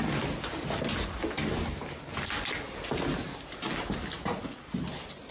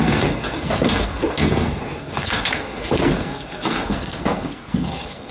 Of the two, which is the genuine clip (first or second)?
first